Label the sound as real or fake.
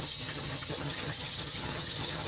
fake